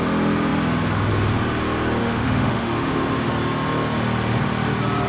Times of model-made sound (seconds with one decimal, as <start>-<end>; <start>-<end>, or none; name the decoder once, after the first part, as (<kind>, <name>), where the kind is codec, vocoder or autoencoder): 2.0-3.3 (autoencoder, DAC-VAE)